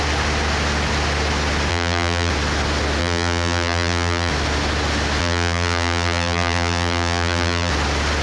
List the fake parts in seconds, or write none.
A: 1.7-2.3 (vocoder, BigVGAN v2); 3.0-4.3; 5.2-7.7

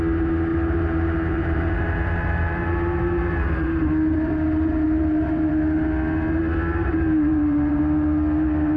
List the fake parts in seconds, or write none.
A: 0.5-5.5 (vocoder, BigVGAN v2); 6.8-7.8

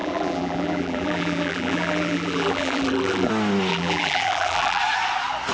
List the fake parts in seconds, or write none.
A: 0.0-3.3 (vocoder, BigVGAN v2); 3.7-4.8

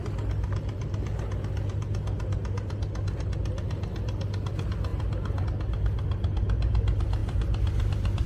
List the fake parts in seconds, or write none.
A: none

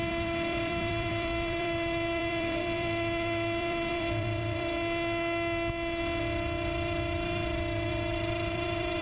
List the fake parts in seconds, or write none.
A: 0.0-4.7 (vocoder, BigVGAN v2); 7.9-9.0